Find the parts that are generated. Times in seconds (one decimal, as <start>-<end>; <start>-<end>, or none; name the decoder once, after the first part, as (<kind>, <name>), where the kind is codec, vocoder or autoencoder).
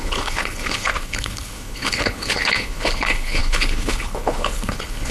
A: 0.0-5.1 (codec, HILCodec)